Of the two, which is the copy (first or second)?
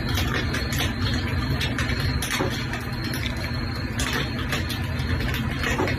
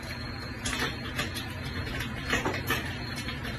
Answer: second